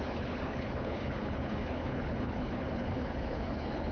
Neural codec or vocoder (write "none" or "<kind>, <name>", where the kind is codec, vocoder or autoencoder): codec, HILCodec